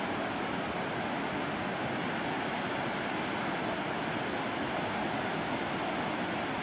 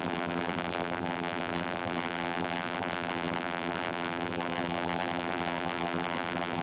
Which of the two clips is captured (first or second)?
first